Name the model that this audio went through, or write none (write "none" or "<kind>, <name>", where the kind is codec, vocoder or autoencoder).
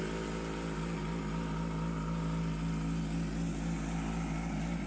none